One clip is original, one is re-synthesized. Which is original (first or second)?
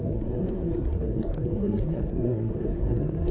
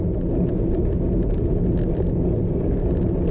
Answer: second